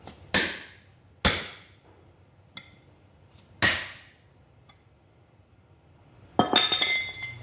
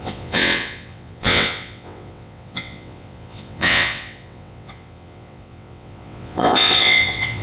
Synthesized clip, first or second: second